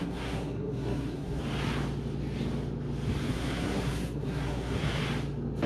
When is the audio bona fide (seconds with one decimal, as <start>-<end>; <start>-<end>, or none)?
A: 1.4-3.3; 5.0-5.7